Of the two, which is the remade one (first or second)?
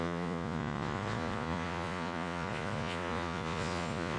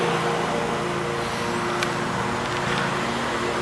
first